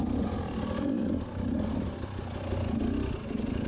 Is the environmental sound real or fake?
real